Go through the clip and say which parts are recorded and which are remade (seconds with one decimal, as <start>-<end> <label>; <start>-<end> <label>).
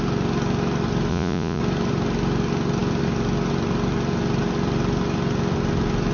0.0-1.1 recorded; 1.1-1.6 remade; 1.6-6.1 recorded